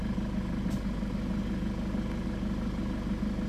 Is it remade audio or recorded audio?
recorded